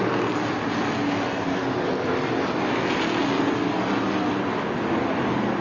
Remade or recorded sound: recorded